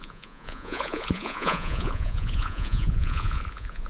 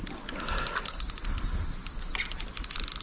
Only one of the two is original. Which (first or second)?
second